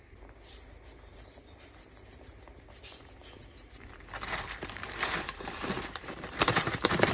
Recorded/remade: remade